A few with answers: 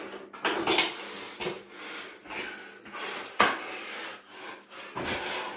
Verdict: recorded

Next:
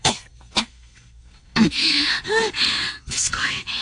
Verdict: remade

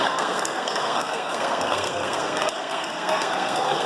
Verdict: remade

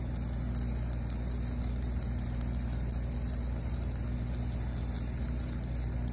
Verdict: recorded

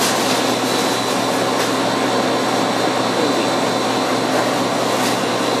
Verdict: recorded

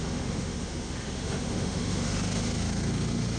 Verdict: remade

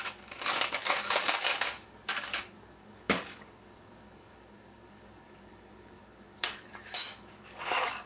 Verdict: remade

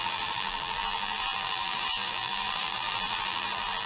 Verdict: remade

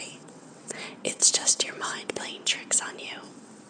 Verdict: remade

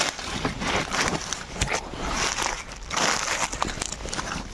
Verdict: recorded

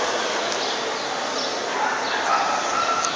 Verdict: recorded